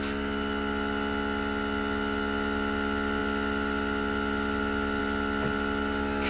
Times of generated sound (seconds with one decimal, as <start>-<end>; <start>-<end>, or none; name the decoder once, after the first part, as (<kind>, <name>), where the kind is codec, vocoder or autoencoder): none